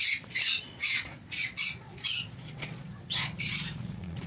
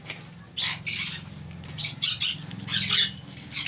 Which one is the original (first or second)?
second